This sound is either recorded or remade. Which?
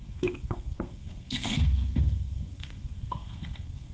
remade